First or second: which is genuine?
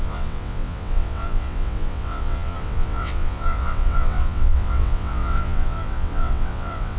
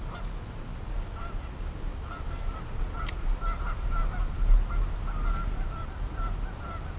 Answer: second